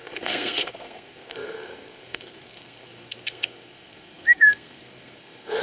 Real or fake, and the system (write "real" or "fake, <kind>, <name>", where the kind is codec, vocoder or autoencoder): fake, codec, SNAC